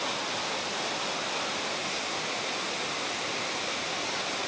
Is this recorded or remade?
recorded